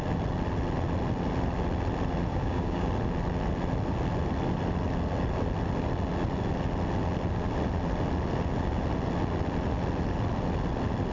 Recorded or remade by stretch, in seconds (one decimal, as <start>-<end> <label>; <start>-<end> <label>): 0.0-2.3 recorded; 2.3-2.9 remade; 2.9-11.1 recorded